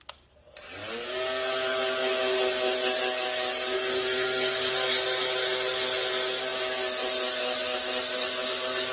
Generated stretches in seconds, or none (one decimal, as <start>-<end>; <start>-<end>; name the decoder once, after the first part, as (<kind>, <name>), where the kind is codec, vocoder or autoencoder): none